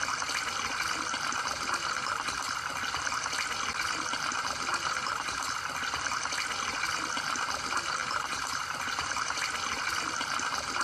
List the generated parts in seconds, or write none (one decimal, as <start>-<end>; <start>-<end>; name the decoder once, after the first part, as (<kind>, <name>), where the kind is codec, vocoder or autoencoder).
4.7-5.5 (vocoder, BigVGAN v2); 8.0-9.4